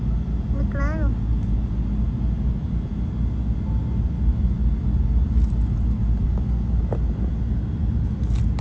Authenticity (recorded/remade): recorded